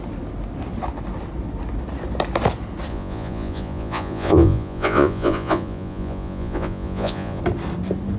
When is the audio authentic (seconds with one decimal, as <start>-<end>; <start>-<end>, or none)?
0.0-2.9; 7.4-8.2